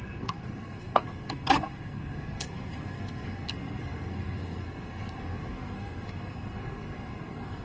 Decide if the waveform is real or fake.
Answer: fake